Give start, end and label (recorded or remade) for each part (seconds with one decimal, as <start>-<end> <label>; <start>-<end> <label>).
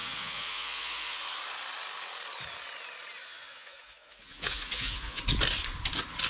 0.0-1.2 remade; 1.2-3.2 recorded; 3.2-5.2 remade; 5.2-6.3 recorded